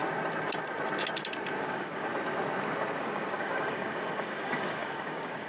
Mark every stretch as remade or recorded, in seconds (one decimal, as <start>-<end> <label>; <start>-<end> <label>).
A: 0.0-1.6 recorded; 1.6-2.1 remade; 2.1-3.0 recorded; 3.0-5.5 remade